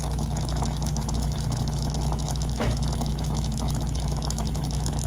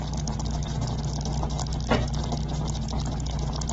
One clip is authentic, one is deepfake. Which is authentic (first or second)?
second